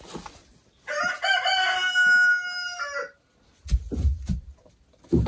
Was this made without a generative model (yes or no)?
yes